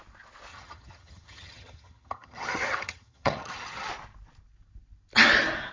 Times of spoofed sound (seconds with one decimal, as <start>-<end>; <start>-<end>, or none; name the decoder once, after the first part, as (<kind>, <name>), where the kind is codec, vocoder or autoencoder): 0.5-3.9 (vocoder, HiFi-GAN)